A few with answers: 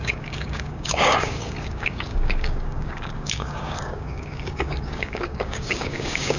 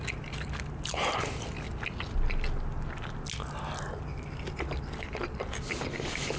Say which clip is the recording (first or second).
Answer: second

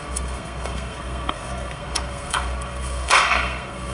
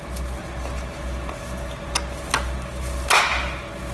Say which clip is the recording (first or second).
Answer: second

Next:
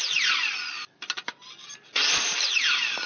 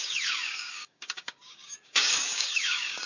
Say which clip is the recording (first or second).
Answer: first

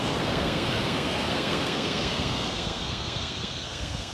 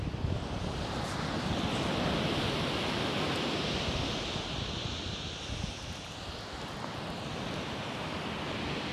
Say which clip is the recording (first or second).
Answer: second